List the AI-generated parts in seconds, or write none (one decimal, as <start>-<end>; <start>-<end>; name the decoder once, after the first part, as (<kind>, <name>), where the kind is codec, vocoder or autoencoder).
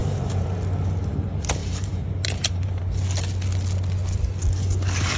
0.0-0.5 (vocoder, BigVGAN v2); 1.6-2.8